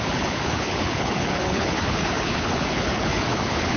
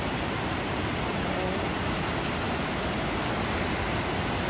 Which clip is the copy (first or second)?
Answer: first